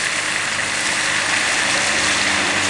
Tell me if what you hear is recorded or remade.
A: recorded